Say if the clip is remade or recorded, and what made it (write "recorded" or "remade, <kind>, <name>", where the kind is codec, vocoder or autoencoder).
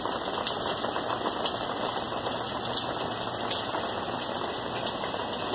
recorded